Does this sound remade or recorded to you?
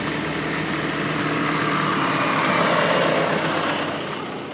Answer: recorded